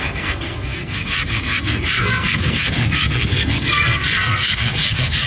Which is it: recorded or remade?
remade